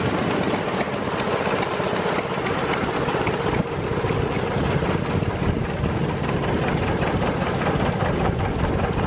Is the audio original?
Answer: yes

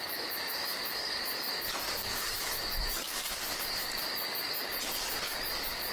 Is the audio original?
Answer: no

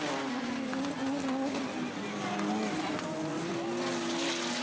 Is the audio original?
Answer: yes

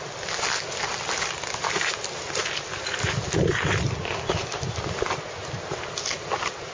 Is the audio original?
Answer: yes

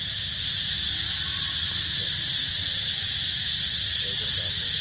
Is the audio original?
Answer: yes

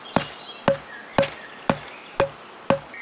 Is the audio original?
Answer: yes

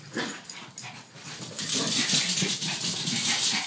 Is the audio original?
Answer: yes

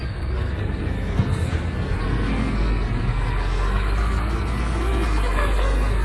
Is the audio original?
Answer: no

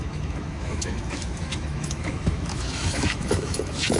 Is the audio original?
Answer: no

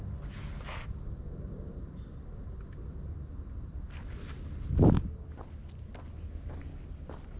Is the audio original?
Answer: yes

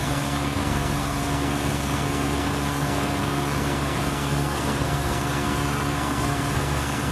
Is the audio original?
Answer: no